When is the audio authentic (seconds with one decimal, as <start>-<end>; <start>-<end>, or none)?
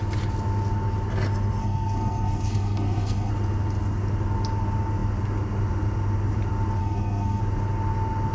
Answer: 0.0-1.6; 3.3-6.8; 7.4-8.3